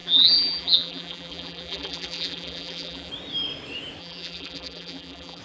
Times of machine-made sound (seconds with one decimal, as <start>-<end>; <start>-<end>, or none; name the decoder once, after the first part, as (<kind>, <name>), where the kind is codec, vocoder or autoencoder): 0.0-3.1 (vocoder, BigVGAN v2); 4.0-5.4